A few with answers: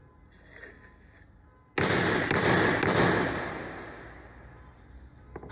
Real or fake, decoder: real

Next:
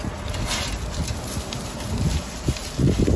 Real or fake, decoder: real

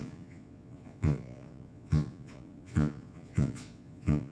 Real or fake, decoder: fake, vocoder, Vocos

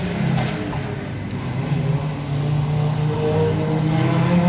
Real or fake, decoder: real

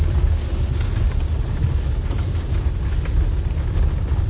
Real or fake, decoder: real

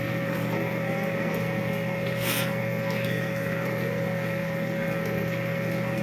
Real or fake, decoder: fake, codec, SNAC